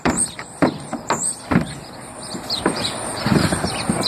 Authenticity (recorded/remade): remade